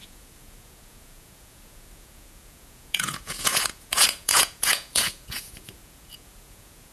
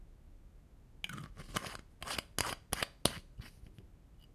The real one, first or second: second